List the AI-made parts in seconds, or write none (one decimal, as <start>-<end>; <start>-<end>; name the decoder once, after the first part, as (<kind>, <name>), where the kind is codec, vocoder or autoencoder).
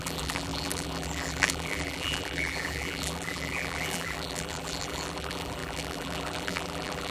0.0-7.1 (vocoder, BigVGAN v2)